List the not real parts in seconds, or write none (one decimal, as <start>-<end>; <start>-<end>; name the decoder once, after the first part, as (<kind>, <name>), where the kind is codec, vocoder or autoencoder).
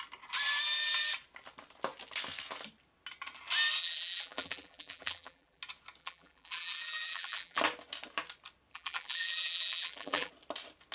3.8-5.6 (vocoder, BigVGAN v2); 6.0-7.6; 8.7-10.3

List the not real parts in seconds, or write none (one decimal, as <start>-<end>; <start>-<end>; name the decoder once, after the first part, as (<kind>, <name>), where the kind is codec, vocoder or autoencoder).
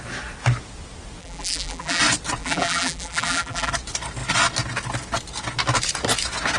1.2-2.0 (vocoder, BigVGAN v2); 2.4-3.7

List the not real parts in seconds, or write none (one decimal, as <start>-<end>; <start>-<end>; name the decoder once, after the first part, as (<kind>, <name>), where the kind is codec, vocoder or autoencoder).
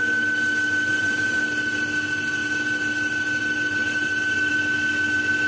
0.9-1.4 (vocoder, BigVGAN v2)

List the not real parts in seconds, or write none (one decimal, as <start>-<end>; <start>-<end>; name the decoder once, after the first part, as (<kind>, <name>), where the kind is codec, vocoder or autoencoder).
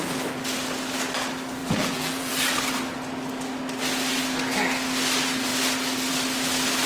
1.6-2.3 (vocoder, BigVGAN v2)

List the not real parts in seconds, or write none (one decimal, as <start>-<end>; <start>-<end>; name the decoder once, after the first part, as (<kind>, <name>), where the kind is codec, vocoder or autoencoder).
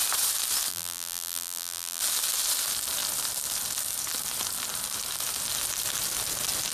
0.7-2.0 (vocoder, BigVGAN v2)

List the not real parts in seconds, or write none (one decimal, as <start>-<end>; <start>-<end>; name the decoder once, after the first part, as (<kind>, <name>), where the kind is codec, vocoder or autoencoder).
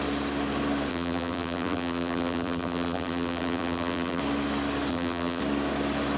0.9-4.2 (vocoder, BigVGAN v2); 4.9-5.4